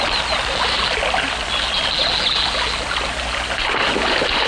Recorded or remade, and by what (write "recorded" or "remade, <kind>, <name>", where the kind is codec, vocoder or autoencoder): recorded